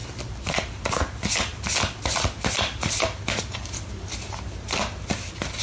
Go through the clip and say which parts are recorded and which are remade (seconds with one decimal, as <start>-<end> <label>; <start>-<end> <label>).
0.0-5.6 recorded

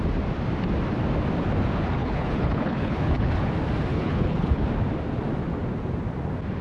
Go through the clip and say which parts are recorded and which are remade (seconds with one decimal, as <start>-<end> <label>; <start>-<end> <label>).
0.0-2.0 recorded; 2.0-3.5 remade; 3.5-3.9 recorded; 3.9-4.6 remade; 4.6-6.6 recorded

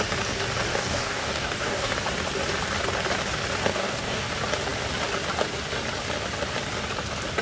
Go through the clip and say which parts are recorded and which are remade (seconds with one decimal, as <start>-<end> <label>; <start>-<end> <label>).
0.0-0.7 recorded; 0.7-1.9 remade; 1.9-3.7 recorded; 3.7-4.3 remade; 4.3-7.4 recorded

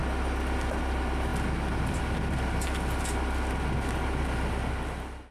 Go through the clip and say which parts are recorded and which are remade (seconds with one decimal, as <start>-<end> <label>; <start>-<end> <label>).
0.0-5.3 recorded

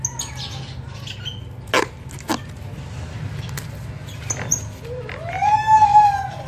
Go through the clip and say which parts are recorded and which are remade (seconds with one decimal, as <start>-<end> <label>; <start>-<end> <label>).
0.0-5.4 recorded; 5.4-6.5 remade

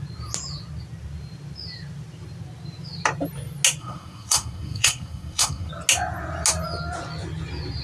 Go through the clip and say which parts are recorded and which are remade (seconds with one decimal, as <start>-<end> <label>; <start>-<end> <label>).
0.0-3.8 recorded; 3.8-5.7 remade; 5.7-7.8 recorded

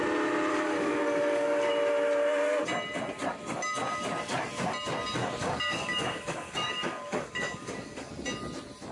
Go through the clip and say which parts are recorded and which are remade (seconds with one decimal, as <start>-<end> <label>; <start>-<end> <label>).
0.0-0.5 recorded; 0.5-1.7 remade; 1.7-5.4 recorded; 5.4-8.1 remade; 8.1-8.9 recorded